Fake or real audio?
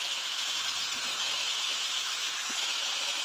fake